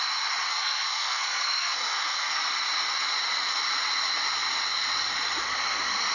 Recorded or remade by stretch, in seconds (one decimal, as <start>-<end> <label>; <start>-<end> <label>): 0.0-0.5 recorded; 0.5-2.4 remade; 2.4-6.1 recorded